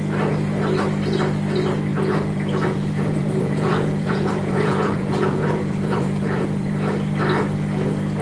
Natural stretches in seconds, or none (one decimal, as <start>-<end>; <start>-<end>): 0.0-1.9; 6.7-8.2